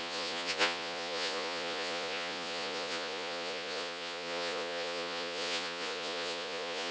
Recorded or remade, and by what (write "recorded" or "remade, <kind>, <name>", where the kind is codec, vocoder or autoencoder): remade, vocoder, Vocos